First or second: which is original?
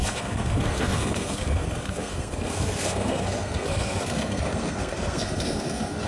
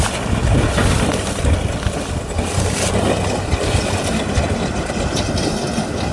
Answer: second